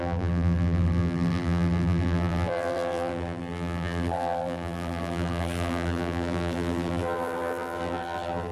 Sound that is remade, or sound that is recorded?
remade